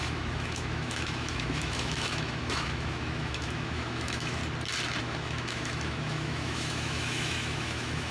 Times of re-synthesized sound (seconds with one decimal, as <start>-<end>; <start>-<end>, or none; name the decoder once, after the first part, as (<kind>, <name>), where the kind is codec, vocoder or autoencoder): 0.0-4.4 (autoencoder, DAC-VAE); 5.0-8.1